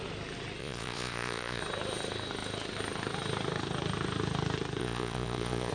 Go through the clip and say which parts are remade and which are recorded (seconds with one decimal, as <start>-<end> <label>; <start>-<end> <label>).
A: 0.0-0.6 recorded; 0.6-1.6 remade; 1.6-4.8 recorded; 4.8-5.7 remade